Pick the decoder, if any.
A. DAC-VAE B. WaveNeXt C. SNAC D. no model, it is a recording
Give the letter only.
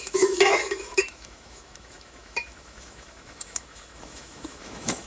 A